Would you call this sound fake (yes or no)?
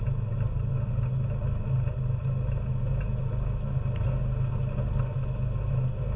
no